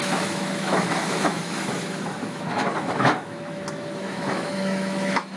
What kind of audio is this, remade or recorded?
remade